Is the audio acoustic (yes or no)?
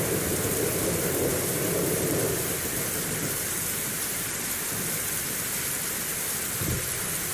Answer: no